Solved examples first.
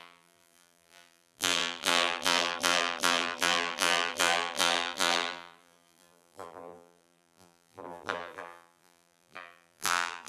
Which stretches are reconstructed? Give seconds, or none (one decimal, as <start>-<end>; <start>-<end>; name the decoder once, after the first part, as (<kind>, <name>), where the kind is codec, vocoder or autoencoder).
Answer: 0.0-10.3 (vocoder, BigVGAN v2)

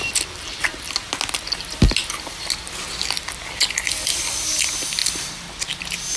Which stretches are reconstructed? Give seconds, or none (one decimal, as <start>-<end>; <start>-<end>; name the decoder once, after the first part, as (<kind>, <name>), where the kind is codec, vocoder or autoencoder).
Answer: none

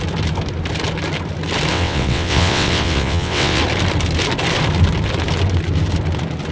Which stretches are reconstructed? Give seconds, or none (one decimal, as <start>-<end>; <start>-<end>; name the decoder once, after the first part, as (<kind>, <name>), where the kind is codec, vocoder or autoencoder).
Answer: 1.7-3.6 (vocoder, WaveNeXt)

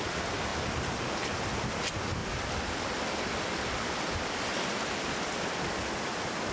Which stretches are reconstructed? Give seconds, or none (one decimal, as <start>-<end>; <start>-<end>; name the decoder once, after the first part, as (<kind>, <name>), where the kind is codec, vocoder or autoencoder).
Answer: 0.5-1.1 (vocoder, BigVGAN v2); 2.2-6.1